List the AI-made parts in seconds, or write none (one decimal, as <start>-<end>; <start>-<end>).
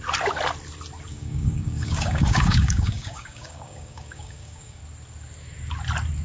1.1-4.8